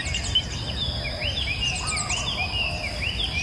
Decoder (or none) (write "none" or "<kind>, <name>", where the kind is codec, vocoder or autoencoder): none